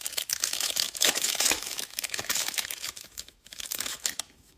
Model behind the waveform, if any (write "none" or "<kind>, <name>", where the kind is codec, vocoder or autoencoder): autoencoder, DAC-VAE